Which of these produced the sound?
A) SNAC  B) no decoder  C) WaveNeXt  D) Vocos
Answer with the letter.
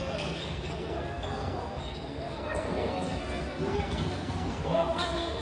A